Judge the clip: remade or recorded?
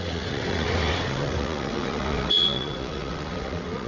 remade